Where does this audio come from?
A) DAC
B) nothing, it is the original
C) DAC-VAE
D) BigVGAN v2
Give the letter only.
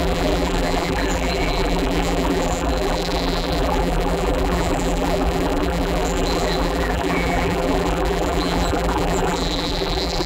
D